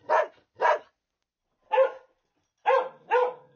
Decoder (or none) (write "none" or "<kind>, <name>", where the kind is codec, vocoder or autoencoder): none